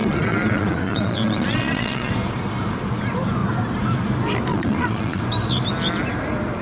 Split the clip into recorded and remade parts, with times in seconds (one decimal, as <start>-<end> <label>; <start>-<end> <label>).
0.0-2.1 remade; 2.1-4.5 recorded; 4.5-5.2 remade; 5.2-6.6 recorded